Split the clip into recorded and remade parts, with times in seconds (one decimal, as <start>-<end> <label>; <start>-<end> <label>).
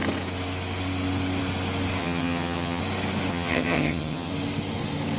0.0-2.0 recorded; 2.0-2.8 remade; 2.8-3.3 recorded; 3.3-4.3 remade; 4.3-5.2 recorded